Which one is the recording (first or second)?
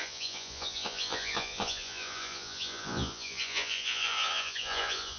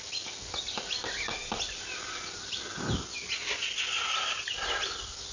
second